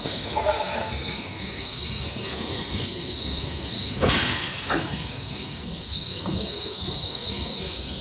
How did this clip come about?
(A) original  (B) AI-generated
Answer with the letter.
B